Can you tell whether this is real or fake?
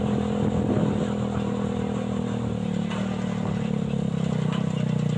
real